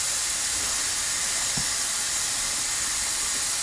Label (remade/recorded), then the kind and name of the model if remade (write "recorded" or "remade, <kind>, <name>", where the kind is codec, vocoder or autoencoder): recorded